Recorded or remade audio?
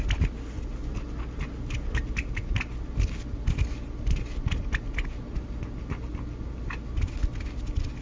recorded